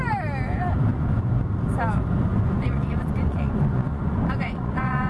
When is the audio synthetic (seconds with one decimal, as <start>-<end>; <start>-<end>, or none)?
0.9-1.4; 2.3-5.1